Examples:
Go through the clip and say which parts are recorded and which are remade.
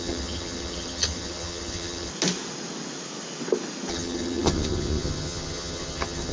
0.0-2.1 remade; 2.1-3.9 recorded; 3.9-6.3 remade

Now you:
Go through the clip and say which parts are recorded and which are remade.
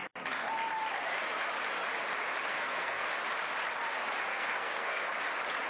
0.0-2.5 recorded; 2.5-3.1 remade; 3.1-4.3 recorded; 4.3-5.0 remade; 5.0-5.7 recorded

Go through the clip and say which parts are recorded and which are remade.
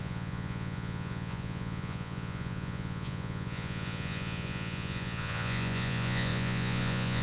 0.0-7.2 remade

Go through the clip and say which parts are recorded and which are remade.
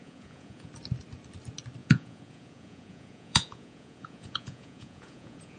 0.0-0.7 remade; 0.7-1.8 recorded; 1.8-5.6 remade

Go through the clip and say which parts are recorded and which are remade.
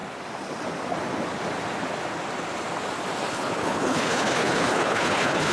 0.0-3.3 recorded; 3.3-5.5 remade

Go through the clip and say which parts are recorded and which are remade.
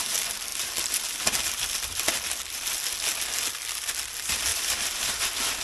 0.0-0.5 recorded; 0.5-2.8 remade; 2.8-4.5 recorded; 4.5-5.6 remade